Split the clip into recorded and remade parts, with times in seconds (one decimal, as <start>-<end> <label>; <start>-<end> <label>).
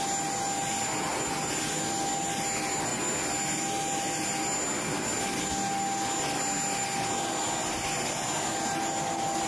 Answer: 0.0-9.5 recorded